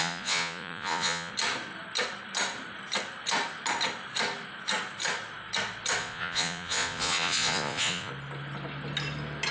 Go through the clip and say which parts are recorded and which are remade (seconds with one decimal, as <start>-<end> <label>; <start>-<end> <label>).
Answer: 0.0-1.3 remade; 1.3-6.0 recorded; 6.0-8.1 remade; 8.1-9.5 recorded